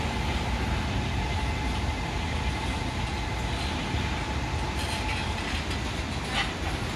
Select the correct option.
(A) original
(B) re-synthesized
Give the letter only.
A